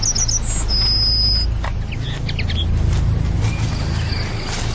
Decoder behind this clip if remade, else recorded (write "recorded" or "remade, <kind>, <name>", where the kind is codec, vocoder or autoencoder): recorded